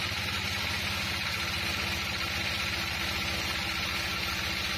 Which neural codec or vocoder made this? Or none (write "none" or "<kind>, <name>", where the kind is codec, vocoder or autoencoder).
none